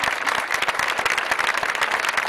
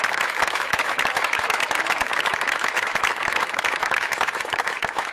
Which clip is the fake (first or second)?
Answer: second